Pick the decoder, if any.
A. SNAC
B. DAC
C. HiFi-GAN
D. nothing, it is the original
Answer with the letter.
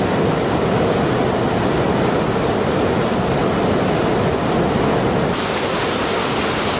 D